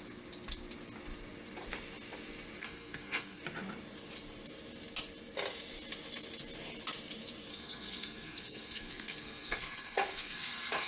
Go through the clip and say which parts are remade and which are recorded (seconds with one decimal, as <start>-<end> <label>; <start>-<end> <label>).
0.0-2.6 recorded; 2.6-3.4 remade; 3.4-7.5 recorded; 7.5-10.9 remade